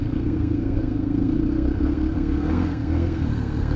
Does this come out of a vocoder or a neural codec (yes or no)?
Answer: yes